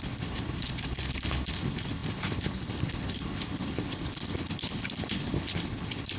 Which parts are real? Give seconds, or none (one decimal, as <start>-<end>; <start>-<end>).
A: none